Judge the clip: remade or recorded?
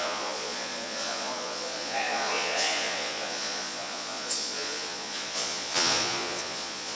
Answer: remade